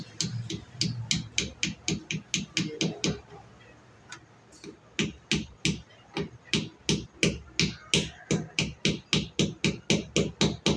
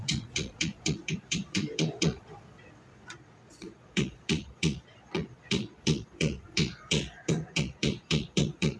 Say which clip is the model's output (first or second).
second